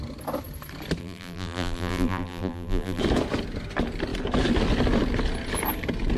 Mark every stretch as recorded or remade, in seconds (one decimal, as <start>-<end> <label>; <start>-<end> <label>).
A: 0.0-1.0 recorded; 1.0-3.0 remade; 3.0-6.2 recorded